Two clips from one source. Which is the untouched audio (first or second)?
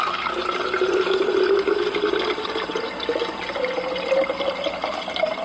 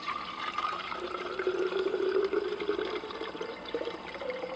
first